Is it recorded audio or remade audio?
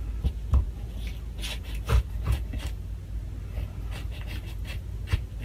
recorded